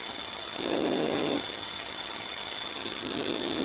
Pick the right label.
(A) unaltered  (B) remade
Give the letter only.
B